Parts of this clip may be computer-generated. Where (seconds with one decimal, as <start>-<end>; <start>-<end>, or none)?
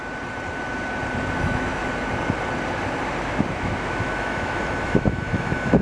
1.4-1.8; 3.5-5.8